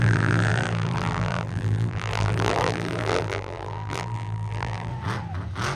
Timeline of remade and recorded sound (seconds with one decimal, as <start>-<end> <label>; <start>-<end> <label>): 0.0-4.9 remade; 4.9-5.8 recorded